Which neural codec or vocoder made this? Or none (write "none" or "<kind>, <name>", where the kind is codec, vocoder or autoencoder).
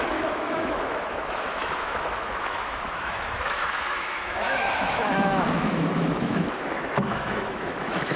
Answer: autoencoder, DAC-VAE